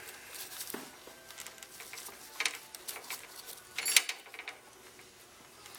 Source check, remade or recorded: recorded